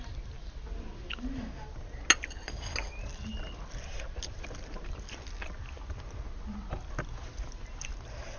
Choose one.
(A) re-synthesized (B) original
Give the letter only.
B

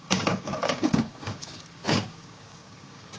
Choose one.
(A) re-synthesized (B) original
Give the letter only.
A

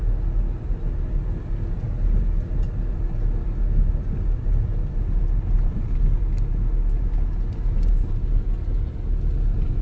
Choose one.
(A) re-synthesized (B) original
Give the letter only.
B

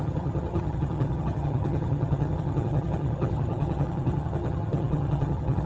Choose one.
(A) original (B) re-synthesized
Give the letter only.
B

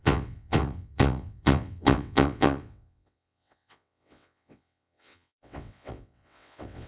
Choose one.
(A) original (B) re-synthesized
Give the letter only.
B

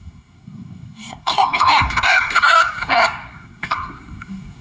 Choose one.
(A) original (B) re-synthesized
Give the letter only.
B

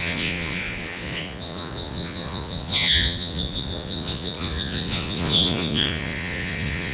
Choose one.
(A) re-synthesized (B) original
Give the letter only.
A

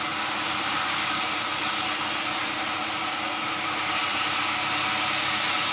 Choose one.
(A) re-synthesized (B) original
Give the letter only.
B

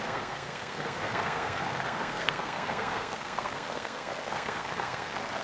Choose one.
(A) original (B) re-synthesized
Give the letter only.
B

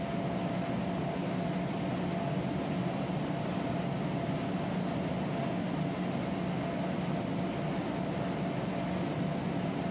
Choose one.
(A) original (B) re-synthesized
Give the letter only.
A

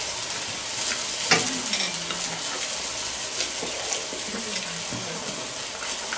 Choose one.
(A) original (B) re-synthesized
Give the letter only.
A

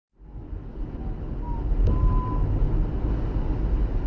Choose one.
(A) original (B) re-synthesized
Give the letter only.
A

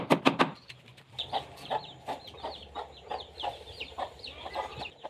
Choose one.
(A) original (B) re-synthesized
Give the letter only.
B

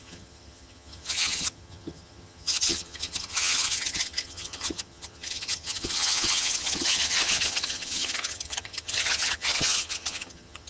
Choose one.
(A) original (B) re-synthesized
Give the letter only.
B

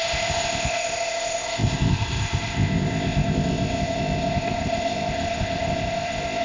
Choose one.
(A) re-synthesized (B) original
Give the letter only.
A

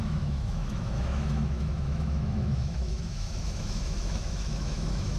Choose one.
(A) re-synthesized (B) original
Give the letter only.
A